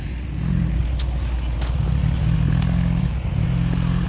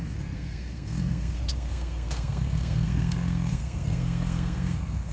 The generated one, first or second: second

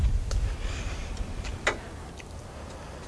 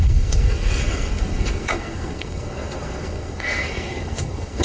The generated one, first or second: second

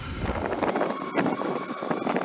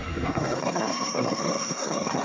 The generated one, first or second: second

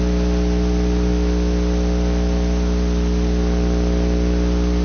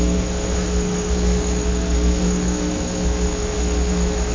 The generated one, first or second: second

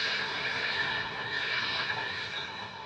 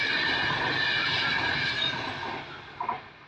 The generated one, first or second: first